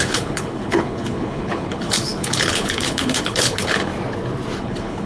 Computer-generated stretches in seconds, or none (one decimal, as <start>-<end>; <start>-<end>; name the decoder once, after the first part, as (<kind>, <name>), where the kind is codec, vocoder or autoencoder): 0.0-3.9 (codec, HILCodec); 4.6-5.1